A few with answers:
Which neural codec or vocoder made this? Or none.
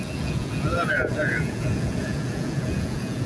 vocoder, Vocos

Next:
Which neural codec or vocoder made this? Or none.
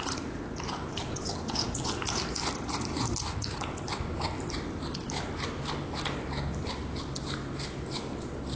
none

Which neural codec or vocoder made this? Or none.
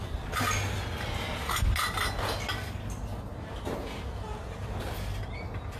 none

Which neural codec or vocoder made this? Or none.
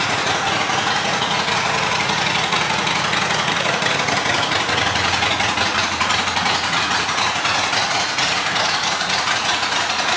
vocoder, Vocos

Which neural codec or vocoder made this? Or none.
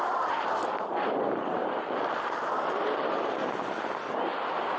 none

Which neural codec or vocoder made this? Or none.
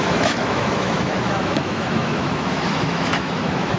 autoencoder, DAC-VAE